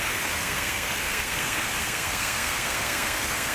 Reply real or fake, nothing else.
fake